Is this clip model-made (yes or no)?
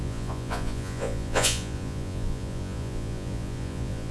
yes